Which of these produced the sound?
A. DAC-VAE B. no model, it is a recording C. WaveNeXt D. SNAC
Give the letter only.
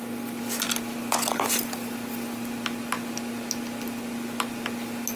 B